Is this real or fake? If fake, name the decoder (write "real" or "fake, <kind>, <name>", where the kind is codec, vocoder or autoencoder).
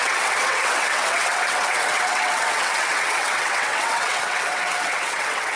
fake, vocoder, WaveNeXt